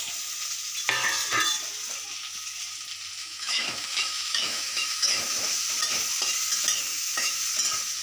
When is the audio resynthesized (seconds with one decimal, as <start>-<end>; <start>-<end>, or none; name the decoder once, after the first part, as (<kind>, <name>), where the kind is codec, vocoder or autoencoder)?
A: 3.2-5.6 (autoencoder, DAC-VAE); 6.9-7.4